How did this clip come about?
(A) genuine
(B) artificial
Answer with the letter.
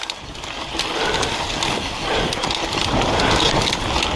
A